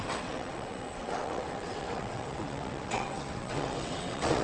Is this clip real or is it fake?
fake